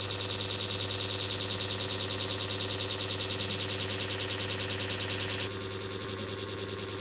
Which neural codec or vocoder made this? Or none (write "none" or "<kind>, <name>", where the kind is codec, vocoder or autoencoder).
none